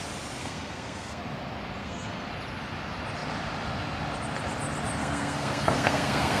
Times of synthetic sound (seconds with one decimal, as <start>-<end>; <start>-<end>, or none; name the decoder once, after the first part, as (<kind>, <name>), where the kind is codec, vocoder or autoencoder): 0.4-1.2 (codec, SNAC); 1.8-2.3; 5.0-6.4